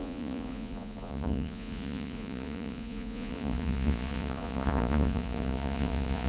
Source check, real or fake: fake